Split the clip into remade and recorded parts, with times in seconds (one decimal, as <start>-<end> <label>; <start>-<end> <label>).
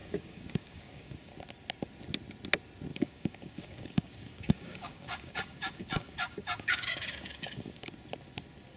0.0-1.3 remade; 1.3-2.9 recorded; 2.9-7.9 remade; 7.9-8.8 recorded